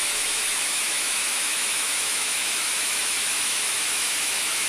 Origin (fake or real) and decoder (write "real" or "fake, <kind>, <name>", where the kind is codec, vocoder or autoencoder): fake, autoencoder, DAC-VAE